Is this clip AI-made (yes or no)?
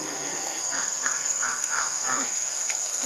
yes